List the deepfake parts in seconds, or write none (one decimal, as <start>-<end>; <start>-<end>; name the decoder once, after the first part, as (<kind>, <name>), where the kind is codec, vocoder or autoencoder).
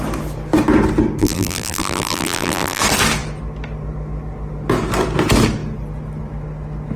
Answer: 1.2-2.8 (vocoder, BigVGAN v2)